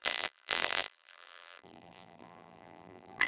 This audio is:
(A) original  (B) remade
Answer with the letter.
B